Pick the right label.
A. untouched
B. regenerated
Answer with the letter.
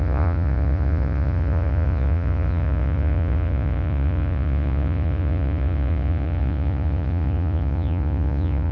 B